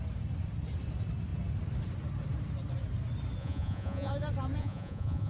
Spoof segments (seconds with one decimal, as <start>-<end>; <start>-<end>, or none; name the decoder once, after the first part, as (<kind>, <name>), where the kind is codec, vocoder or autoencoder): 3.4-4.1 (vocoder, Vocos); 4.6-5.3

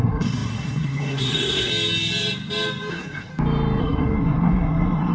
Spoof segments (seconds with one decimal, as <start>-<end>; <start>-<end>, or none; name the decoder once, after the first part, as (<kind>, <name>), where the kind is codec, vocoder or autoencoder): 0.0-1.7 (codec, SNAC); 2.9-3.3; 3.8-5.1

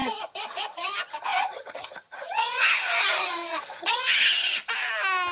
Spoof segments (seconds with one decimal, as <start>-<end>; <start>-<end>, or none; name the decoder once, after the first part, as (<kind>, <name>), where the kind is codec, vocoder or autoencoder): 0.0-4.6 (vocoder, HiFi-GAN)

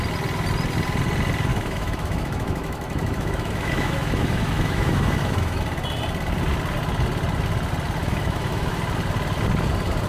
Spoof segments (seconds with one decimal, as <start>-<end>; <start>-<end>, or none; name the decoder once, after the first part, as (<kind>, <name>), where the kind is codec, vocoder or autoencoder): 1.5-5.6 (autoencoder, DAC-VAE); 8.0-8.8

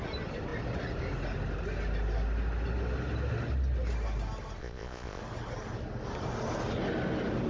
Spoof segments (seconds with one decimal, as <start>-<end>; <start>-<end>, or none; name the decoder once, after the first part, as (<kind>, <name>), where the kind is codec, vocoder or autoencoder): 4.6-5.2 (vocoder, Vocos)

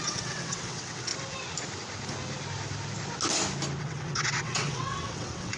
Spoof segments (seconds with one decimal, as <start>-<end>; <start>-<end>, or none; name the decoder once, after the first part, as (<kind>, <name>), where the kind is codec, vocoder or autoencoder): 0.0-1.1 (vocoder, WaveNeXt); 3.8-5.6

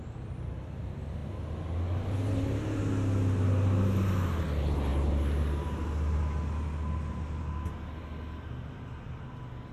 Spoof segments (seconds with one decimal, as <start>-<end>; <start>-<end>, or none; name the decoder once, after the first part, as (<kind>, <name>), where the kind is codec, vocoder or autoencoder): none